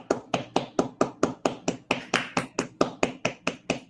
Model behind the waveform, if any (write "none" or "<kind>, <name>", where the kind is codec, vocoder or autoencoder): none